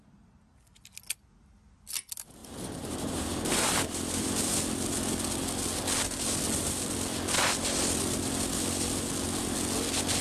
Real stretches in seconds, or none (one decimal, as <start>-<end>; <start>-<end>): 0.0-2.4; 4.5-10.2